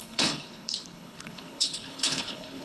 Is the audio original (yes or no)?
no